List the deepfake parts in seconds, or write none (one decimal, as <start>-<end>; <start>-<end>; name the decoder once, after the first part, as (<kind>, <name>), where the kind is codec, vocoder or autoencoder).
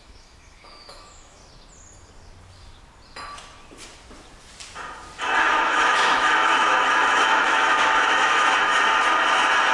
0.0-1.4 (autoencoder, DAC-VAE); 5.4-8.7